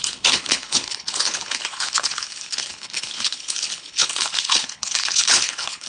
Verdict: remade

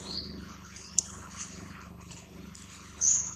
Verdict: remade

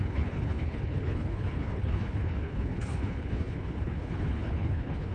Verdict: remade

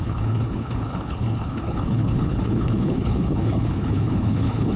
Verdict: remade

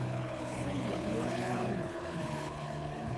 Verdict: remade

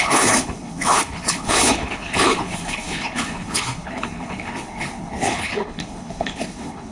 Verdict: remade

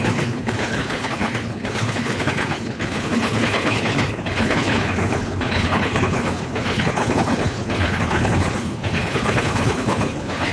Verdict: remade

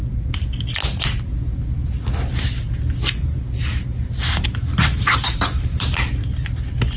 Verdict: recorded